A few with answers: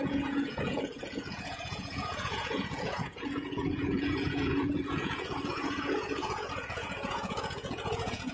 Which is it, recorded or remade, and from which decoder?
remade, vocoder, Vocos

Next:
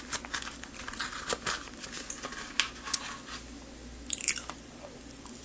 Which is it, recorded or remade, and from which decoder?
recorded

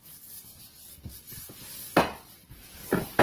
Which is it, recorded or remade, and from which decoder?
recorded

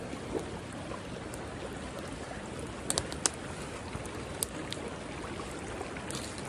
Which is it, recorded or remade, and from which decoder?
recorded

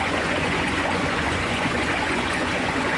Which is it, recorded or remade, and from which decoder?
remade, vocoder, Vocos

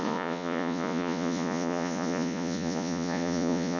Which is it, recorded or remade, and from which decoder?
remade, vocoder, Vocos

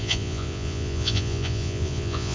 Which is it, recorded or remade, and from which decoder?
remade, vocoder, Vocos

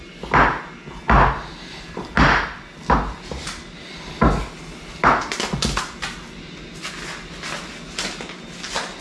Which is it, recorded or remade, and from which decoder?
recorded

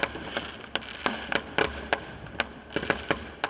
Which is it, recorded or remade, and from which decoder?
recorded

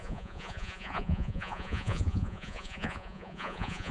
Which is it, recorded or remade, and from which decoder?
remade, vocoder, Vocos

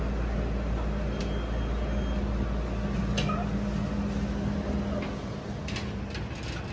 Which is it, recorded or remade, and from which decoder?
recorded